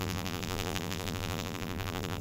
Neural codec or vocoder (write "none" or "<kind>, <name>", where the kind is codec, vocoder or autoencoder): vocoder, BigVGAN v2